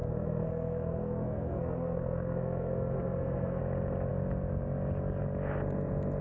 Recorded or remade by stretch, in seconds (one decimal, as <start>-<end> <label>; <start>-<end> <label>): 0.0-3.6 remade; 3.6-6.2 recorded